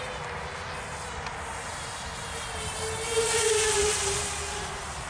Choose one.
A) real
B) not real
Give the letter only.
A